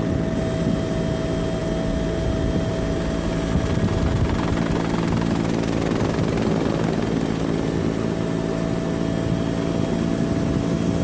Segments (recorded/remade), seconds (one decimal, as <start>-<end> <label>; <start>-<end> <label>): 0.0-11.0 recorded